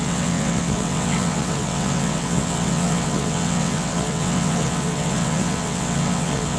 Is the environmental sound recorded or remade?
remade